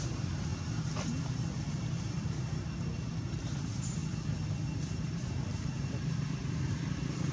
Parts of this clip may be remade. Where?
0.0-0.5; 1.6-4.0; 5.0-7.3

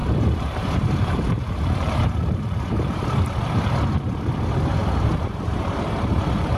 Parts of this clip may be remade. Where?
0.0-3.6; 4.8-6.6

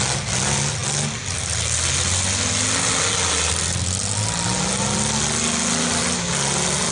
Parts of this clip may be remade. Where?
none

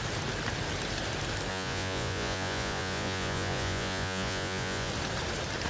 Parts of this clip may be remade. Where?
1.5-4.9